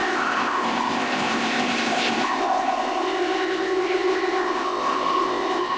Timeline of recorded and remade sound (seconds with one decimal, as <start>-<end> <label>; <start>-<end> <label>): 0.0-5.8 remade